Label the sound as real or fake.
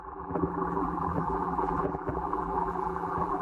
fake